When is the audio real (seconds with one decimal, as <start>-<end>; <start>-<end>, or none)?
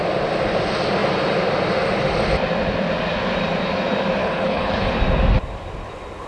0.0-4.2; 4.9-6.3